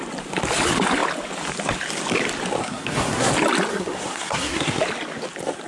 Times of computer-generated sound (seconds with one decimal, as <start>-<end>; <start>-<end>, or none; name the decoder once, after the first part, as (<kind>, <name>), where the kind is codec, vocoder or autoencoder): 2.6-3.3 (codec, SNAC); 3.7-4.8